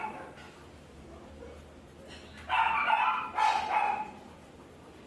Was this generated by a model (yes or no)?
no